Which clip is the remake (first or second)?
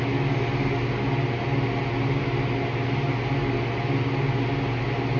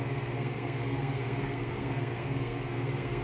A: second